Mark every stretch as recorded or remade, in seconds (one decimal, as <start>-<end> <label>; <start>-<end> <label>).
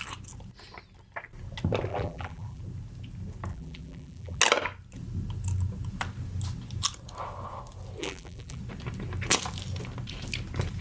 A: 0.0-1.9 recorded; 1.9-2.6 remade; 2.6-3.5 recorded; 3.5-4.4 remade; 4.4-8.0 recorded; 8.0-8.6 remade; 8.6-10.8 recorded